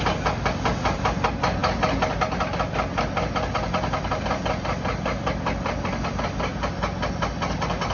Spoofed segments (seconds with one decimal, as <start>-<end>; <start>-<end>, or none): none